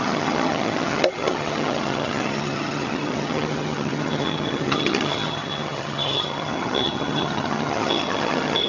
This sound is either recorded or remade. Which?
remade